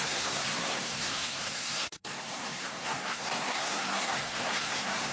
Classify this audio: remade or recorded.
remade